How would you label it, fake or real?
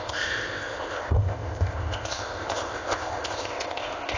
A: fake